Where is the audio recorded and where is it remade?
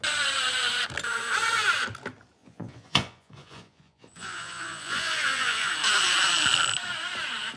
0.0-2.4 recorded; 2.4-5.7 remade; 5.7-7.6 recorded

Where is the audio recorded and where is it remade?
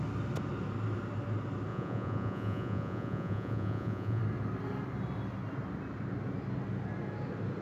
0.0-1.7 recorded; 1.7-4.2 remade; 4.2-7.6 recorded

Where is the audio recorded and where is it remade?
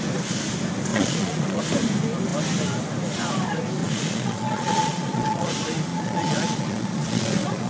0.0-0.9 recorded; 0.9-1.6 remade; 1.6-3.8 recorded; 3.8-5.5 remade; 5.5-5.9 recorded; 5.9-7.7 remade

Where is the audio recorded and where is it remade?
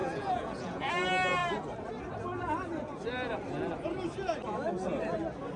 0.0-0.9 remade; 0.9-5.6 recorded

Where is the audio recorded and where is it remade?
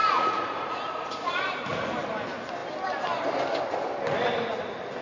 0.0-1.9 remade; 1.9-5.0 recorded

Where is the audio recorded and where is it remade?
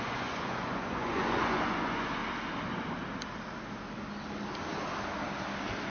0.0-2.2 remade; 2.2-5.9 recorded